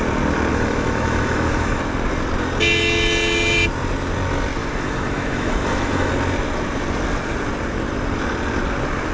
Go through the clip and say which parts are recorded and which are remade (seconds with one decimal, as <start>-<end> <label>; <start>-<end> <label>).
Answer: 0.0-0.5 recorded; 0.5-1.8 remade; 1.8-4.6 recorded; 4.6-6.1 remade; 6.1-9.1 recorded